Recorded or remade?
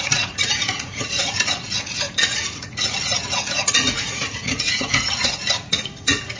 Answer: remade